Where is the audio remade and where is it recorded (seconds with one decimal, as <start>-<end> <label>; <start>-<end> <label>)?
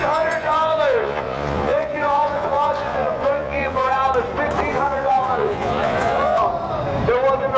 0.0-4.0 remade; 4.0-4.7 recorded; 4.7-6.4 remade; 6.4-7.6 recorded